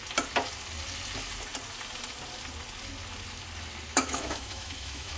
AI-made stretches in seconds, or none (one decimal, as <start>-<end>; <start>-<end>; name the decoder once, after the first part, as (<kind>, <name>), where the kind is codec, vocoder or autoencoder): 3.9-5.2 (autoencoder, DAC-VAE)

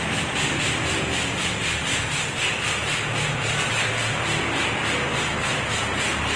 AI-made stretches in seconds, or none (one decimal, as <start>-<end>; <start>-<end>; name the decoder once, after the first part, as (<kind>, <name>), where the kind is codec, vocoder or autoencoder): none

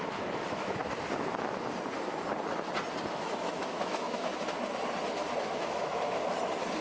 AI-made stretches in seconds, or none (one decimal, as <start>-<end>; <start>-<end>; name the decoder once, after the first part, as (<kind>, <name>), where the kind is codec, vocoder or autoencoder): 0.0-0.8 (autoencoder, DAC-VAE); 3.1-4.3; 5.4-6.2

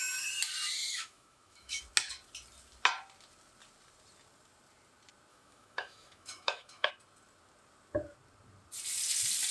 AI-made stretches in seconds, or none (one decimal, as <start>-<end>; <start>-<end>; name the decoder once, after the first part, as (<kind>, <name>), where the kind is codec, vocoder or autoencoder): 0.9-1.8 (autoencoder, DAC-VAE); 5.3-6.9

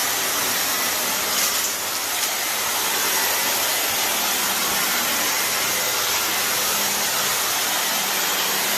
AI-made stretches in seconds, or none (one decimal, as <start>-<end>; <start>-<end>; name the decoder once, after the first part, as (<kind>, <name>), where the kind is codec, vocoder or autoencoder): none

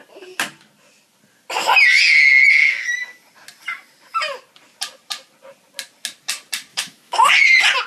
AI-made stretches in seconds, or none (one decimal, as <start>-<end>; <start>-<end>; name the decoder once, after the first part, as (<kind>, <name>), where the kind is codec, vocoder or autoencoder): 6.7-7.3 (autoencoder, DAC-VAE)

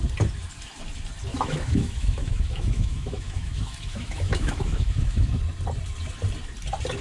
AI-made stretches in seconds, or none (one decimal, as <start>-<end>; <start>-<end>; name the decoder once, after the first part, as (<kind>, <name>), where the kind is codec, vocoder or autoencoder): 1.3-5.4 (autoencoder, DAC-VAE)